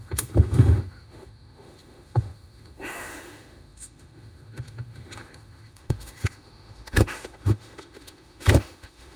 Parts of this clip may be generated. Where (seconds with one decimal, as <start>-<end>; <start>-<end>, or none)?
0.0-9.2